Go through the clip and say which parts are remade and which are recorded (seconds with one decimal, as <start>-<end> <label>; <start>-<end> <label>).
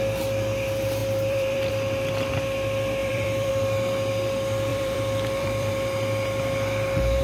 0.0-1.0 recorded; 1.0-1.7 remade; 1.7-3.0 recorded; 3.0-3.5 remade; 3.5-4.7 recorded; 4.7-5.7 remade; 5.7-7.2 recorded